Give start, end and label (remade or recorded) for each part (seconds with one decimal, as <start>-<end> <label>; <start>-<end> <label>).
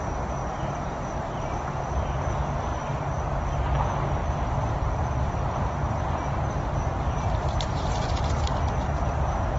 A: 0.0-0.4 recorded; 0.4-2.0 remade; 2.0-2.7 recorded; 2.7-3.4 remade; 3.4-4.2 recorded; 4.2-8.6 remade; 8.6-9.6 recorded